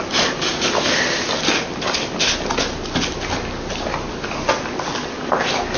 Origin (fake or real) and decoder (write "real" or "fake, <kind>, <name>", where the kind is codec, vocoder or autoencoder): real